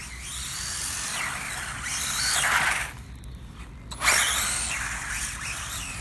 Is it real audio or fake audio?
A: real